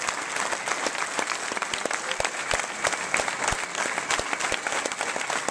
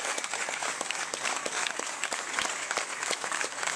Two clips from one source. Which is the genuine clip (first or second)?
first